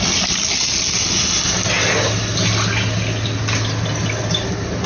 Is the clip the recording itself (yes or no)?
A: yes